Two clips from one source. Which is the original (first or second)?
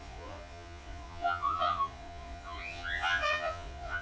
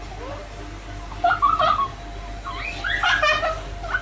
second